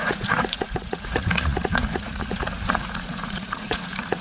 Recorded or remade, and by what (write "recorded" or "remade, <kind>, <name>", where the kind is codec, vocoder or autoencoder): remade, vocoder, Vocos